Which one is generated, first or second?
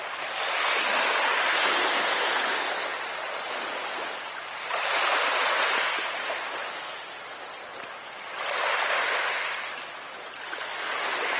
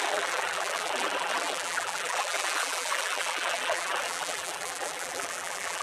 second